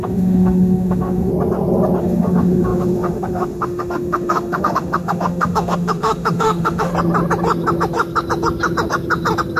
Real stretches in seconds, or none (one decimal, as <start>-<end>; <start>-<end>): 1.3-2.0; 6.9-9.6

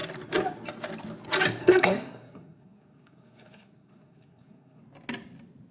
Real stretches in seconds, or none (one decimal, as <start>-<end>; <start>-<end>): 0.0-1.6; 4.8-5.7

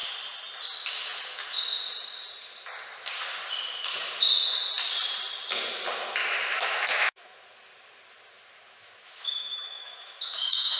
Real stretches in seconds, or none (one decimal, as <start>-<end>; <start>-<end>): 0.0-6.2; 7.4-8.8

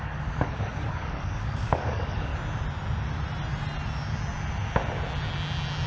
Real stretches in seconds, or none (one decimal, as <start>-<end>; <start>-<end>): 2.3-5.9

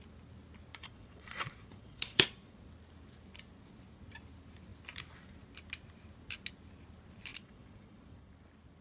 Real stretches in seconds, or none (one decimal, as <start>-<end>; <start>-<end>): 0.0-0.7; 2.6-7.3; 8.3-8.8

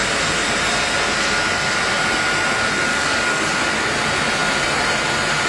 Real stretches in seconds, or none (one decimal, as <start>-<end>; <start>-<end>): 0.0-2.9; 3.5-5.5

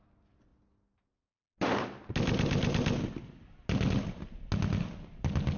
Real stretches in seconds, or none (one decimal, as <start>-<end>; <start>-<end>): 0.0-5.6

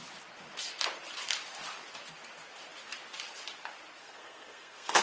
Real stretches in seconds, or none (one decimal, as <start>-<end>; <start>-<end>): 0.0-4.0